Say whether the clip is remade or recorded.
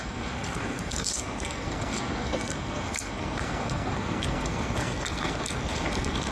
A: remade